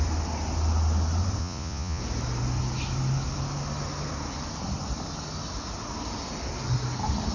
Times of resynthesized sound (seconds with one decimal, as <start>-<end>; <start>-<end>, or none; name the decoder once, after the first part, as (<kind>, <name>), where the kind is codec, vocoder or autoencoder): 1.4-2.0 (vocoder, Vocos)

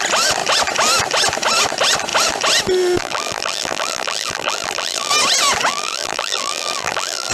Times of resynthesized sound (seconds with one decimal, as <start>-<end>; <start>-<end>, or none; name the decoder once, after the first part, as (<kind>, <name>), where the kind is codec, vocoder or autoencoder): 3.0-5.1 (vocoder, BigVGAN v2); 5.7-7.3